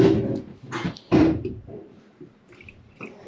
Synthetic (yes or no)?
no